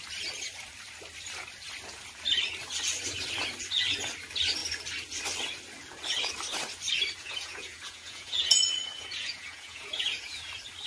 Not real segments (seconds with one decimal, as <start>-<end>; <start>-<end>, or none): 7.2-10.5